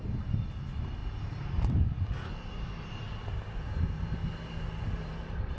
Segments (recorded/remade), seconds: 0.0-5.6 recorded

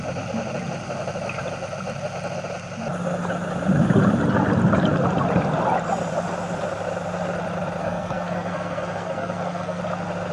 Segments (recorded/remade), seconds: 0.0-7.8 recorded; 7.8-9.8 remade; 9.8-10.3 recorded